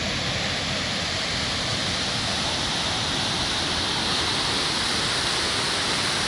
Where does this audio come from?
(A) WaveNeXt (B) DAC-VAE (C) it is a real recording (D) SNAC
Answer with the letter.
C